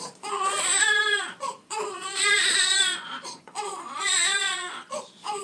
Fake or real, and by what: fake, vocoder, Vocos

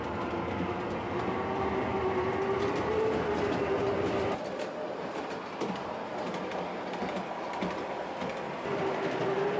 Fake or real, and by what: real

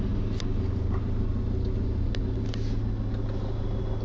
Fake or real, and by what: real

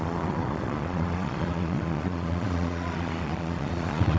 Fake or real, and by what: fake, vocoder, Vocos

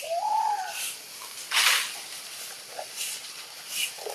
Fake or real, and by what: fake, vocoder, BigVGAN v2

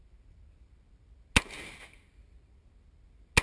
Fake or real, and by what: real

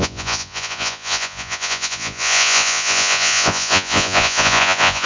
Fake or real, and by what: fake, vocoder, Vocos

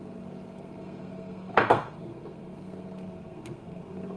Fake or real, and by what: fake, codec, SNAC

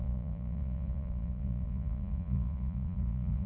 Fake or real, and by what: fake, vocoder, Vocos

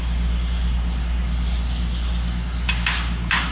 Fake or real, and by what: real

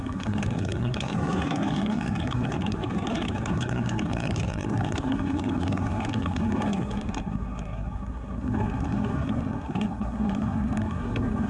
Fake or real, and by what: fake, codec, SNAC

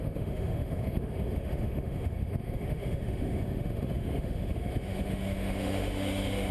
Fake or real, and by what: fake, autoencoder, DAC-VAE